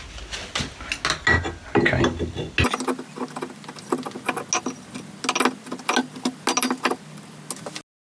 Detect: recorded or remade recorded